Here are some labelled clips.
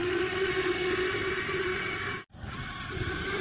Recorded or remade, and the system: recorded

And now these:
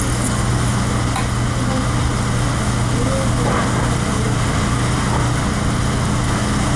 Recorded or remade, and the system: recorded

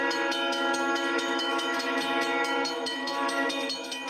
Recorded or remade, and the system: remade, autoencoder, DAC-VAE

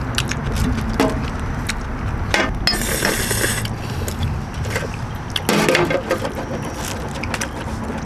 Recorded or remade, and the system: recorded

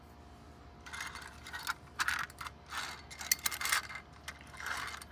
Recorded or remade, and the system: recorded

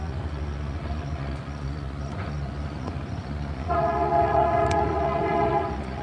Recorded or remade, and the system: remade, vocoder, Vocos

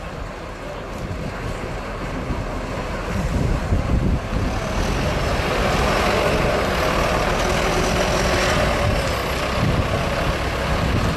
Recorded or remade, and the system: recorded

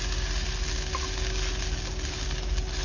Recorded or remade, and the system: recorded